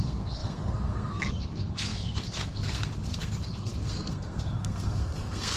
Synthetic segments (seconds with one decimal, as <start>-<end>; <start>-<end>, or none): 0.0-5.6